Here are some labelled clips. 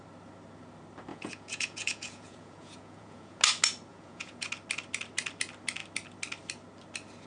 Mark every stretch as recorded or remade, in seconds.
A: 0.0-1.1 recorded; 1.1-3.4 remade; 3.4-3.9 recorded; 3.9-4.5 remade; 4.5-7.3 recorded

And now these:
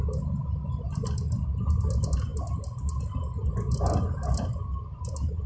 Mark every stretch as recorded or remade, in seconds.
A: 0.0-5.5 recorded

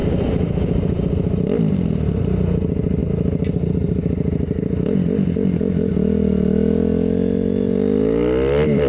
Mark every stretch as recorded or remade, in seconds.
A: 0.0-8.9 recorded

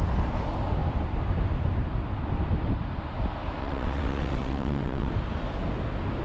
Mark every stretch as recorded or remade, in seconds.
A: 0.0-3.6 recorded; 3.6-5.1 remade; 5.1-6.2 recorded

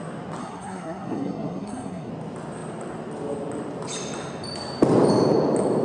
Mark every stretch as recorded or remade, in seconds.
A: 0.0-0.4 recorded; 0.4-2.1 remade; 2.1-5.8 recorded

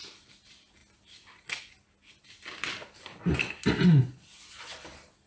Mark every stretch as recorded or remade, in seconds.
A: 0.0-5.3 recorded

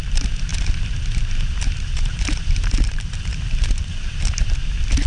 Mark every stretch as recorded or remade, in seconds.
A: 0.0-4.6 remade; 4.6-5.1 recorded